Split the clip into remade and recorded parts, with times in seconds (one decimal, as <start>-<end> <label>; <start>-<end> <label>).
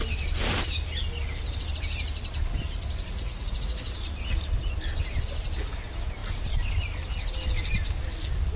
0.0-3.1 recorded; 3.1-3.8 remade; 3.8-8.6 recorded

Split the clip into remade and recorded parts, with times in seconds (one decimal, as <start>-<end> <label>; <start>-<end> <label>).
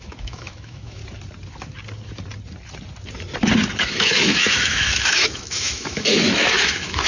0.0-1.0 remade; 1.0-3.8 recorded; 3.8-7.1 remade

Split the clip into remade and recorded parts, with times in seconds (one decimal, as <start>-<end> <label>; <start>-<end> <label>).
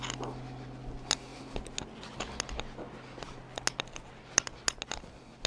0.0-5.5 recorded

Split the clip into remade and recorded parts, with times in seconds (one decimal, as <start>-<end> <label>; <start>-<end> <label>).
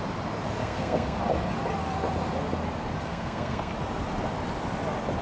0.0-0.6 recorded; 0.6-1.2 remade; 1.2-3.1 recorded; 3.1-3.7 remade; 3.7-5.2 recorded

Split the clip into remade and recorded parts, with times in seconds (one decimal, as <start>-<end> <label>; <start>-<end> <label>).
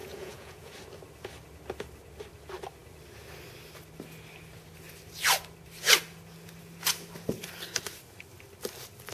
0.0-0.7 remade; 0.7-9.1 recorded